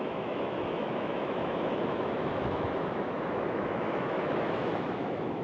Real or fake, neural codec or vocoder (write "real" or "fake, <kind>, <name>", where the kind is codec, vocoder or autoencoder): fake, autoencoder, DAC-VAE